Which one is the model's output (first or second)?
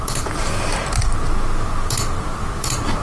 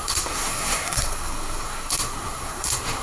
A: second